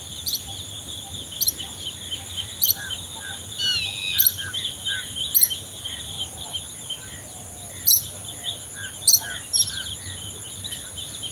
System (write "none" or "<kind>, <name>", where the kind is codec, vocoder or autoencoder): none